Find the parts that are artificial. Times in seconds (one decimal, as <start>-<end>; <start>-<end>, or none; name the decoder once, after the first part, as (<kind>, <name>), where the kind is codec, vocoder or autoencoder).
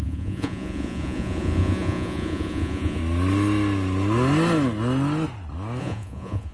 0.0-3.0 (vocoder, Vocos); 5.8-6.5